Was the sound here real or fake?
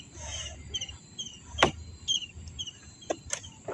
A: fake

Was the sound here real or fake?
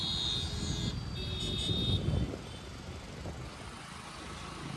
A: real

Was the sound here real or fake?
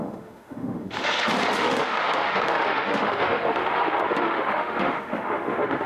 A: fake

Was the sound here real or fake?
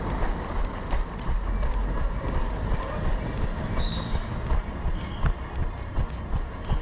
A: real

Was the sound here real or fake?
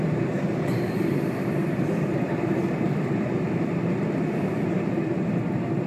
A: fake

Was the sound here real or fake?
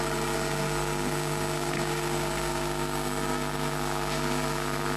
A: fake